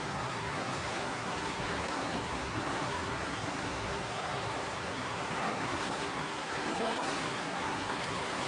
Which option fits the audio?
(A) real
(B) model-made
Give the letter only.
B